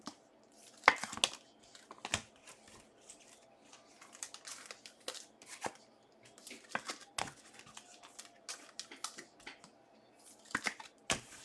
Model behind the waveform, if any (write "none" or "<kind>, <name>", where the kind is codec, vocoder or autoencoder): none